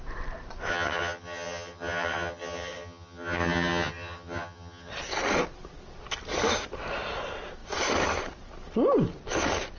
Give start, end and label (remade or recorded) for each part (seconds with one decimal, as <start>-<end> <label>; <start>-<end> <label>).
0.0-0.7 recorded; 0.7-4.9 remade; 4.9-9.8 recorded